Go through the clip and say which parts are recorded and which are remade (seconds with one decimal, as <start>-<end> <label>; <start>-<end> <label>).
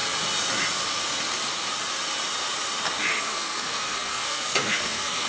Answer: 0.0-3.2 recorded; 3.2-5.3 remade